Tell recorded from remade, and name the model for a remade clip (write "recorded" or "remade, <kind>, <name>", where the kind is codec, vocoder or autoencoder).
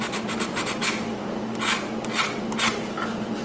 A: recorded